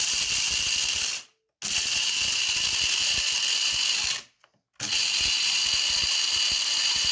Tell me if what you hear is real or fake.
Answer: real